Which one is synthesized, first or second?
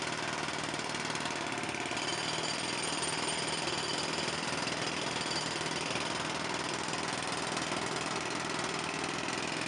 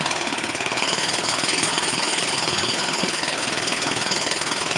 second